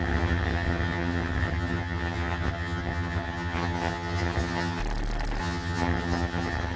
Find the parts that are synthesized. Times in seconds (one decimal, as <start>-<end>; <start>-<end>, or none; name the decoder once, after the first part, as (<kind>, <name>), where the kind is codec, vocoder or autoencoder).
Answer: 0.0-4.8 (vocoder, HiFi-GAN); 5.4-6.8